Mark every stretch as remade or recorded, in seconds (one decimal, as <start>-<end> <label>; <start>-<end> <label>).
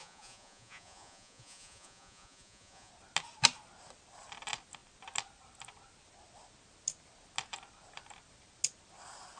0.0-2.9 remade; 2.9-9.4 recorded